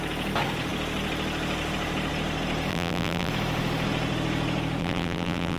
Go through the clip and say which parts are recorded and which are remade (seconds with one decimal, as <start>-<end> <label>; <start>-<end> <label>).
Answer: 0.0-2.7 recorded; 2.7-3.3 remade; 3.3-4.8 recorded; 4.8-5.6 remade